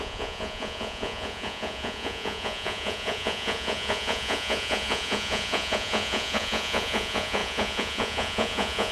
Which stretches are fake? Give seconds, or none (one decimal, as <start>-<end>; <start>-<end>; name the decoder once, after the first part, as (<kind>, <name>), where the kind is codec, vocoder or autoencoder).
0.0-8.9 (vocoder, Vocos)